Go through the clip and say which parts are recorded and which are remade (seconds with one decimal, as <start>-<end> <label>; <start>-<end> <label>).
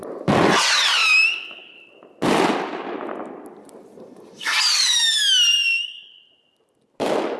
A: 0.0-7.4 recorded